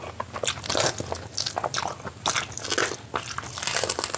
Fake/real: real